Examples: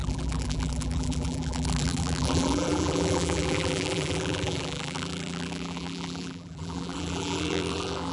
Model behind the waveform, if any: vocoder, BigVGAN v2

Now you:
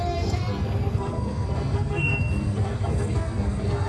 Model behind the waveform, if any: codec, SNAC